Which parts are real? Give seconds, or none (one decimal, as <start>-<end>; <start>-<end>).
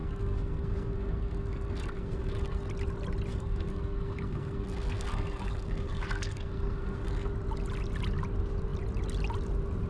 2.7-3.3; 7.3-9.9